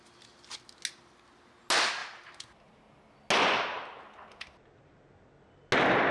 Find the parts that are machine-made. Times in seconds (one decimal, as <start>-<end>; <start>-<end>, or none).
none